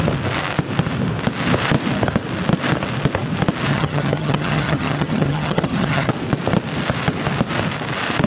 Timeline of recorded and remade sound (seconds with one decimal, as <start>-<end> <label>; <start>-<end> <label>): 0.0-3.7 recorded; 3.7-6.1 remade; 6.1-8.3 recorded